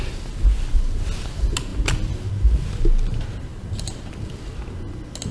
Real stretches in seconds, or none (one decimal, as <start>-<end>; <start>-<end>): 0.0-1.7; 2.3-3.5; 4.1-5.3